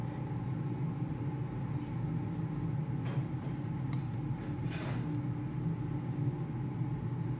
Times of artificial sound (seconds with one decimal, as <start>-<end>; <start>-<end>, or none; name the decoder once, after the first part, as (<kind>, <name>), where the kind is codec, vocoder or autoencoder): none